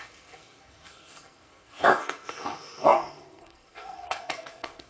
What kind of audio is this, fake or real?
fake